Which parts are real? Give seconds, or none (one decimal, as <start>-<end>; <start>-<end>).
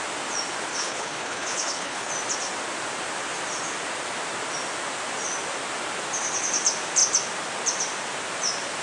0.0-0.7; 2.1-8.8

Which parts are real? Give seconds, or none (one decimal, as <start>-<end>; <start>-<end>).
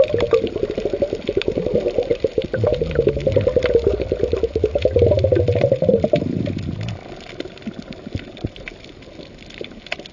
0.0-10.1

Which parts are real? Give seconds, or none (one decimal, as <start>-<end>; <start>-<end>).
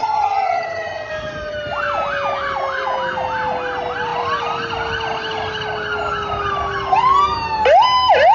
1.1-8.3